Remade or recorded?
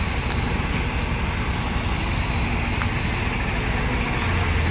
recorded